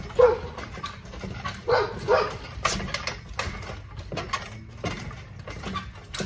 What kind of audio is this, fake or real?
real